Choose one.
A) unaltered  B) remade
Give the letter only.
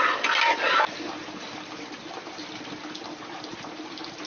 A